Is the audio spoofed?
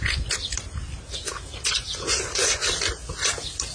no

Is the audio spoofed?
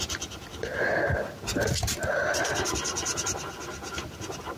no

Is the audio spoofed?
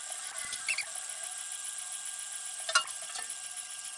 no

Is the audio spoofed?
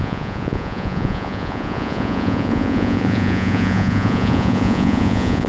yes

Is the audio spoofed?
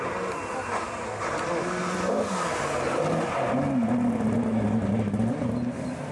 no